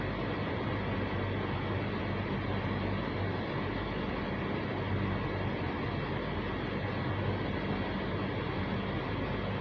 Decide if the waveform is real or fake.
real